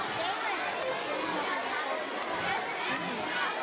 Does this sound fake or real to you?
real